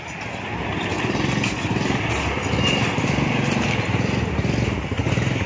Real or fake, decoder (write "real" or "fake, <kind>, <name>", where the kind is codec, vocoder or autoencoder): real